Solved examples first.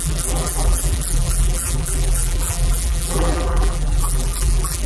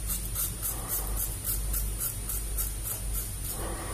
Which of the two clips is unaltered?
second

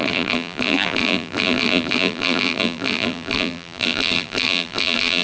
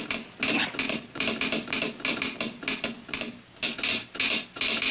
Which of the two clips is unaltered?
second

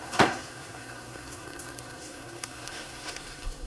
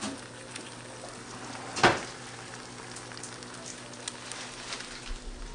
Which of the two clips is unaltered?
second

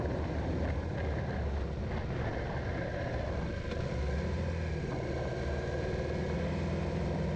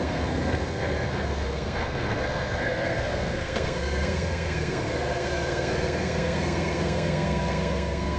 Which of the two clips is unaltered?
first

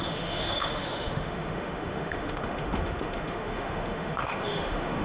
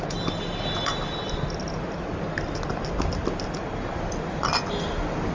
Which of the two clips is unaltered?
second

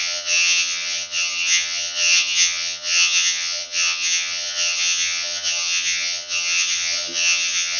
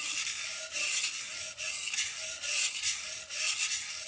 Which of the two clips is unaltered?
second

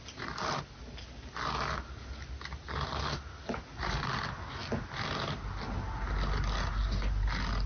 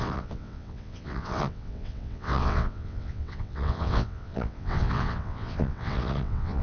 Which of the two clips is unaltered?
first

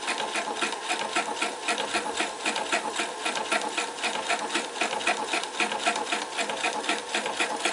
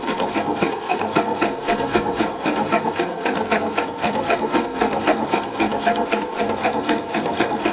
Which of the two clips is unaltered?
first